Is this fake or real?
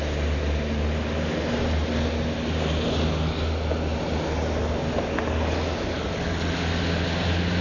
real